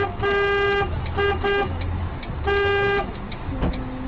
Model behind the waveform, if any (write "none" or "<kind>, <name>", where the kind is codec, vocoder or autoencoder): none